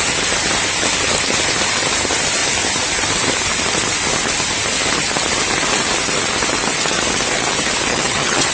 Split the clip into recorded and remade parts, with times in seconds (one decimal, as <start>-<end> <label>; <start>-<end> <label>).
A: 0.0-7.9 recorded; 7.9-8.5 remade

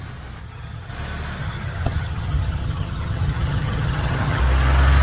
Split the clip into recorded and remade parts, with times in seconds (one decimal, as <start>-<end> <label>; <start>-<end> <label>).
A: 0.0-0.4 recorded; 0.4-0.9 remade; 0.9-1.4 recorded; 1.4-4.4 remade; 4.4-5.0 recorded

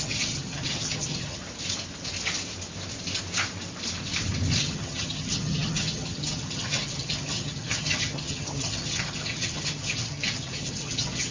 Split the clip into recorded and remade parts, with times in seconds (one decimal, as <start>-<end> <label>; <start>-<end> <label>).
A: 0.0-1.4 remade; 1.4-4.6 recorded; 4.6-11.3 remade